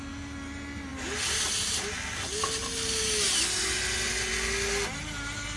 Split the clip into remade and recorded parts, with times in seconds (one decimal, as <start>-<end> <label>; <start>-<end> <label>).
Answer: 0.0-5.6 recorded